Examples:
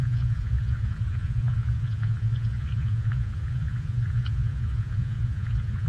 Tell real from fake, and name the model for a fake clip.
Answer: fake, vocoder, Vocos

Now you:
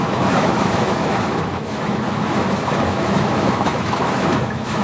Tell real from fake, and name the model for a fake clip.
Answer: fake, autoencoder, DAC-VAE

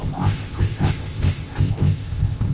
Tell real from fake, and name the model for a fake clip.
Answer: fake, codec, ZipCodec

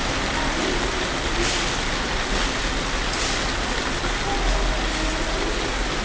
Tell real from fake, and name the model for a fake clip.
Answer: real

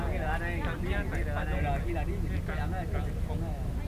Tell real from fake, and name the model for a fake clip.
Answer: real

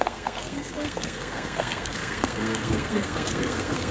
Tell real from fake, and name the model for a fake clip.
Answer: fake, codec, SNAC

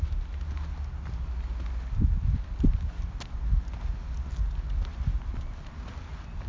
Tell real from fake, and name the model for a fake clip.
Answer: real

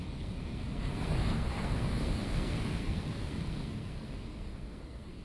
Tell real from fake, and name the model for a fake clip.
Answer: fake, codec, SNAC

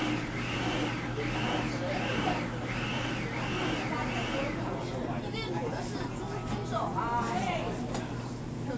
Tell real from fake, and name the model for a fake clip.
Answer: real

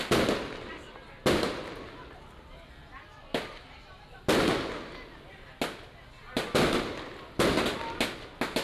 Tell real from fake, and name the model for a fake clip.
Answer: real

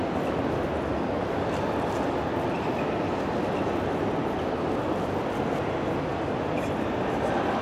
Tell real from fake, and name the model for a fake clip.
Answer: real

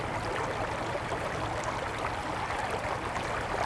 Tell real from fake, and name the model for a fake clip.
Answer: real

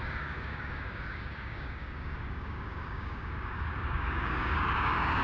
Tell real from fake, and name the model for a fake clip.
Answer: fake, codec, DAC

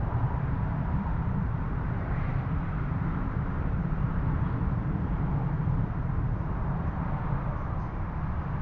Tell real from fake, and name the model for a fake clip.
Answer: fake, vocoder, BigVGAN v2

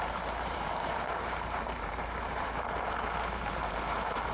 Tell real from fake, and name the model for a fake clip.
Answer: fake, vocoder, BigVGAN v2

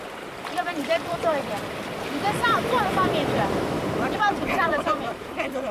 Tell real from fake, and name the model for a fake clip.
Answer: fake, vocoder, BigVGAN v2